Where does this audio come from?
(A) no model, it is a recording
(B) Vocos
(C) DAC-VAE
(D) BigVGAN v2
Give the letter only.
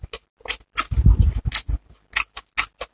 A